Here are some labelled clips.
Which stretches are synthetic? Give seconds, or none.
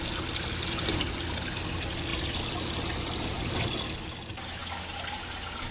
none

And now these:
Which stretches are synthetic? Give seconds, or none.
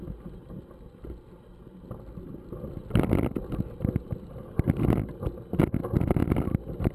none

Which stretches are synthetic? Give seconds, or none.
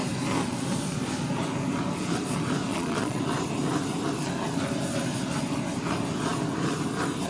2.7-3.2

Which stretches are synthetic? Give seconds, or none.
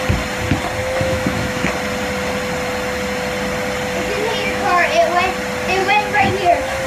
0.8-1.7; 4.4-4.9; 5.8-6.3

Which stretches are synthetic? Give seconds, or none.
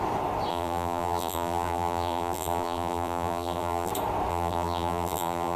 0.5-3.9; 4.3-5.6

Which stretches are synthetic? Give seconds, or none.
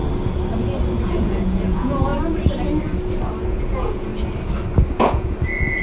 1.1-2.1; 3.5-4.1; 5.0-5.8